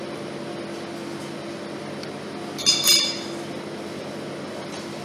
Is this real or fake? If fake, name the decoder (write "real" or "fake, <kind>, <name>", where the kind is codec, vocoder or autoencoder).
real